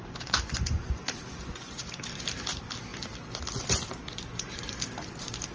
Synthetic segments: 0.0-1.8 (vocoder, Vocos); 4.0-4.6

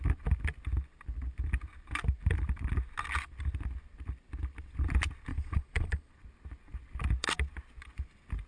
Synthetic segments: 5.3-6.1 (vocoder, Vocos)

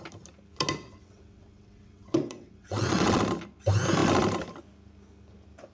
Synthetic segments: 0.8-3.2 (vocoder, WaveNeXt)

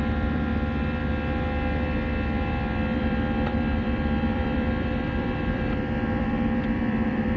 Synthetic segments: 0.0-0.5 (vocoder, BigVGAN v2); 3.0-7.4

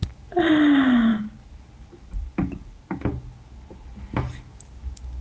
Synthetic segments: none

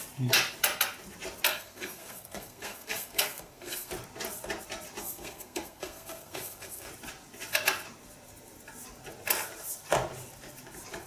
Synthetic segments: 1.5-3.9 (codec, SNAC); 5.0-6.9